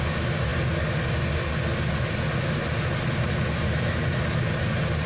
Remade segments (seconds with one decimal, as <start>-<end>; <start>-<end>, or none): none